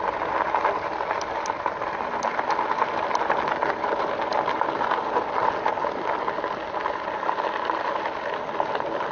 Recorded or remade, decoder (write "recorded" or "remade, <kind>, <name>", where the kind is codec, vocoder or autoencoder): recorded